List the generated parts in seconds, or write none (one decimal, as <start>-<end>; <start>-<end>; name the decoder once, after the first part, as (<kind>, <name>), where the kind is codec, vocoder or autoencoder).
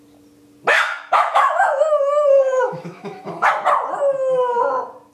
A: 0.7-3.5 (autoencoder, DAC-VAE)